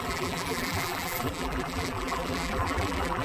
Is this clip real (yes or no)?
no